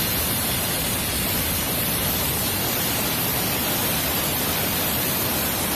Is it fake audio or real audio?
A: real